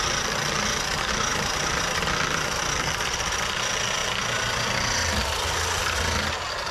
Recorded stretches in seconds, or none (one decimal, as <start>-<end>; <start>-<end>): 0.0-1.3; 2.0-6.7